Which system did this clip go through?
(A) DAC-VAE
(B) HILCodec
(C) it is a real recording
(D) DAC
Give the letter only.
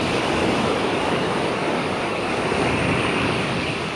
D